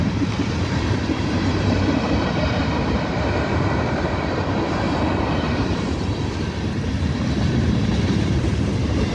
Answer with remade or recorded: remade